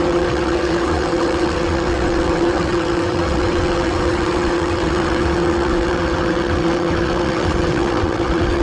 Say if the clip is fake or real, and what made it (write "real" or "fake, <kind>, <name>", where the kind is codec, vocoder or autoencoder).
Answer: fake, vocoder, WaveNeXt